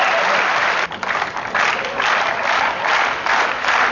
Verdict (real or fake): real